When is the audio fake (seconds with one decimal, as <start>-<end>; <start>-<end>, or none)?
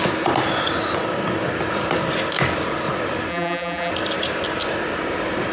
3.3-3.9